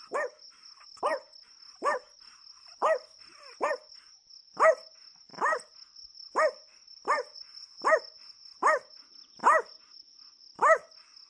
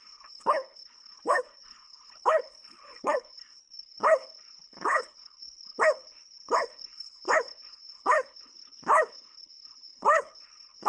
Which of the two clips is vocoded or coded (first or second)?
second